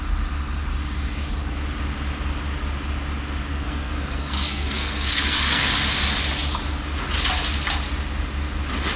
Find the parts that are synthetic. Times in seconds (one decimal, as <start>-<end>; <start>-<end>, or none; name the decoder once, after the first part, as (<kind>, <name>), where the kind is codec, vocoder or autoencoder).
3.5-5.7 (codec, SNAC)

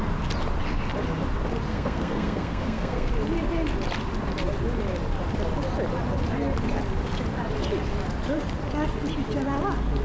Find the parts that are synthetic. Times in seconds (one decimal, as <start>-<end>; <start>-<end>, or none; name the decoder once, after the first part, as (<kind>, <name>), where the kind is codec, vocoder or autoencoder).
1.7-3.1 (codec, SNAC)